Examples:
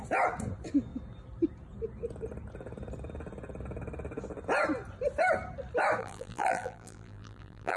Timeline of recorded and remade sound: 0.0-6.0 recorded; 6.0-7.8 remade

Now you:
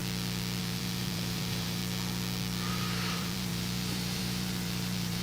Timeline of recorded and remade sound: 0.0-0.6 recorded; 0.6-1.8 remade; 1.8-2.7 recorded; 2.7-5.2 remade

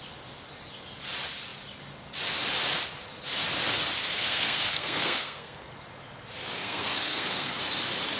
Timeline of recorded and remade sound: 0.0-4.0 recorded; 4.0-5.7 remade; 5.7-6.4 recorded; 6.4-7.6 remade; 7.6-8.2 recorded

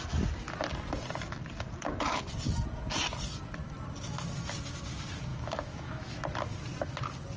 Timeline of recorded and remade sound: 0.0-5.3 recorded; 5.3-6.2 remade; 6.2-7.4 recorded